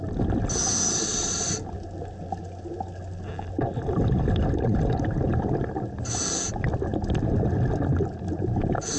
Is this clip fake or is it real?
real